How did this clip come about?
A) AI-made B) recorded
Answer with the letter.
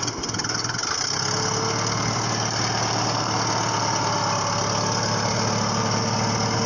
B